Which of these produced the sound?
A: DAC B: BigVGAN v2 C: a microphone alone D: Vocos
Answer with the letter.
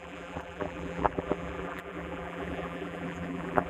B